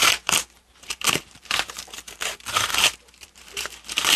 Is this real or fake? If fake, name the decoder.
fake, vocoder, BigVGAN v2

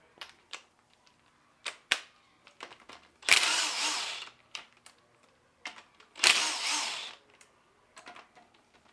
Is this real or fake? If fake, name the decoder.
fake, vocoder, BigVGAN v2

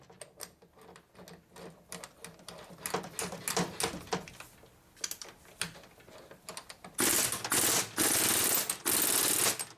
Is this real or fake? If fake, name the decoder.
real